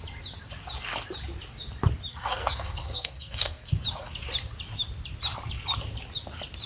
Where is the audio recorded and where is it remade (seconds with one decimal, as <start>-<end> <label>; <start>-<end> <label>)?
0.0-2.1 recorded; 2.1-3.7 remade; 3.7-6.7 recorded